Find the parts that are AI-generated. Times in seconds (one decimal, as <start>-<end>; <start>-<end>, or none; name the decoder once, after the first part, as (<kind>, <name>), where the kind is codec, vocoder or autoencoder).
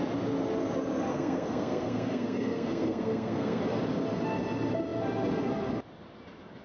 1.1-3.6 (codec, SNAC)